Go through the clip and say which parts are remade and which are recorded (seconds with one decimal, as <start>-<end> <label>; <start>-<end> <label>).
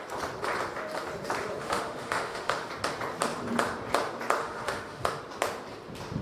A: 0.0-1.6 recorded; 1.6-2.7 remade; 2.7-4.4 recorded; 4.4-5.2 remade; 5.2-6.2 recorded